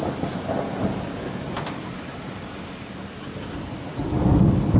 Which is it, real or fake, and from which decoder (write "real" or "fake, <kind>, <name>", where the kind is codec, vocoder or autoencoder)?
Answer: real